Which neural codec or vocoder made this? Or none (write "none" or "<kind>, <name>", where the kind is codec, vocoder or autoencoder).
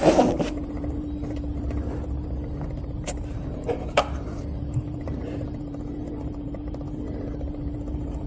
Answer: vocoder, BigVGAN v2